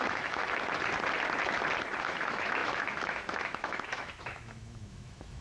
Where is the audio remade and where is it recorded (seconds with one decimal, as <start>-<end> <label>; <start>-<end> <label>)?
0.0-0.4 remade; 0.4-2.0 recorded; 2.0-5.4 remade